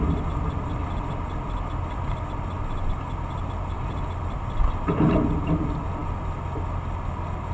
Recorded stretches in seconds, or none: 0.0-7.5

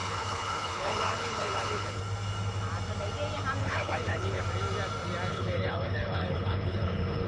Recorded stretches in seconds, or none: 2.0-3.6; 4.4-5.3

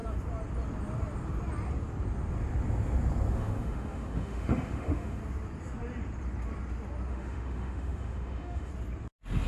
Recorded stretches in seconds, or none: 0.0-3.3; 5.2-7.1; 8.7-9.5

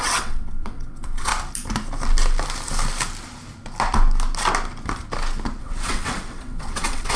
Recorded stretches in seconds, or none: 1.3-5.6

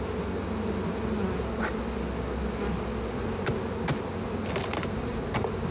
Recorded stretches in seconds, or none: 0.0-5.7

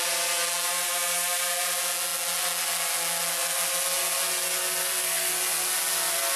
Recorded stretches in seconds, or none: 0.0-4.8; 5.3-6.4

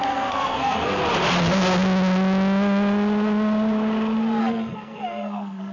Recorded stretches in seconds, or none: 1.0-4.4